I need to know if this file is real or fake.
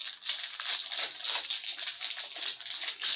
real